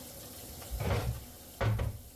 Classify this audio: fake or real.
real